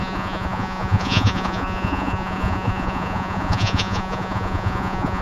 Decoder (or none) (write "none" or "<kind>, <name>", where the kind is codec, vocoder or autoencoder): vocoder, Vocos